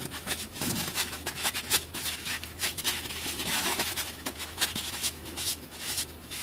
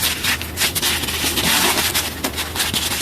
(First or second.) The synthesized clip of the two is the first